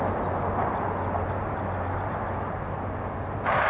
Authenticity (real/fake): real